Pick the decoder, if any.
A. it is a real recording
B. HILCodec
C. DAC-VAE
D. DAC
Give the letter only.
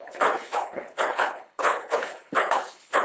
B